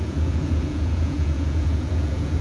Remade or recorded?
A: remade